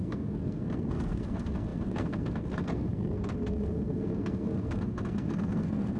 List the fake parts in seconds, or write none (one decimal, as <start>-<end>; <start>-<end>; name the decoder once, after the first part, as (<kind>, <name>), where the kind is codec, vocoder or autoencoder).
0.0-6.0 (codec, SNAC)